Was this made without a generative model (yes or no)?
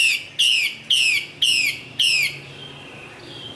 yes